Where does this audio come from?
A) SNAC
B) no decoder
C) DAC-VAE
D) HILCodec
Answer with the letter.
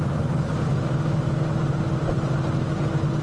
B